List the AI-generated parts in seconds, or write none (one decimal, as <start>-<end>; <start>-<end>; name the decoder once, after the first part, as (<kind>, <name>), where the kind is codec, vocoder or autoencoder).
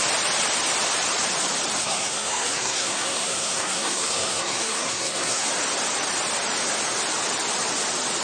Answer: 1.8-5.5 (codec, SNAC)